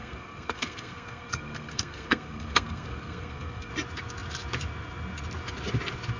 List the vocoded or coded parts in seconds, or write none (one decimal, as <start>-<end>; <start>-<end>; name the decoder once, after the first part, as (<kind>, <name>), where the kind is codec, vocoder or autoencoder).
0.0-3.7 (codec, SNAC)